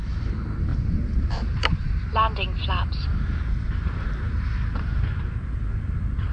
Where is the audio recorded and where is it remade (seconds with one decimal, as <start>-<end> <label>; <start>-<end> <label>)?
0.0-0.7 recorded; 0.7-1.7 remade; 1.7-6.3 recorded